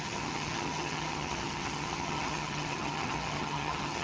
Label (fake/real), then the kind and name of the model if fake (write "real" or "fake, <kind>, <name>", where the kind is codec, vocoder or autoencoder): fake, vocoder, HiFi-GAN